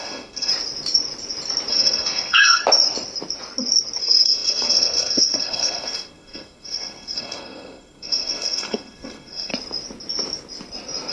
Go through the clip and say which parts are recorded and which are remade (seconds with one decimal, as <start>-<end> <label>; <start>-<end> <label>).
0.0-0.5 remade; 0.5-1.7 recorded; 1.7-2.6 remade; 2.6-4.0 recorded; 4.0-9.5 remade; 9.5-11.1 recorded